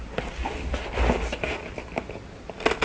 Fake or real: real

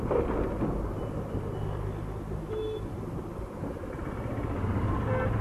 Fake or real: real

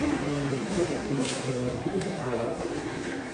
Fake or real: fake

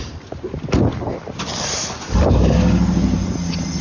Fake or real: real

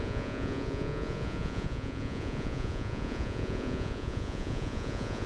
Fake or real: fake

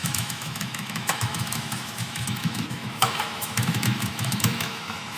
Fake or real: fake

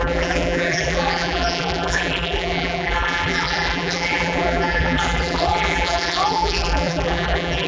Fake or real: fake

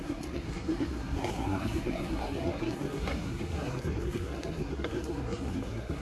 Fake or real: fake